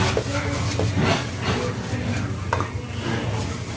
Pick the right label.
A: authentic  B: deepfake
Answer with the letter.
A